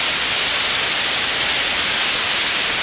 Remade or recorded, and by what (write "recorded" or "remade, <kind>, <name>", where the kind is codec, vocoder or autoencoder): recorded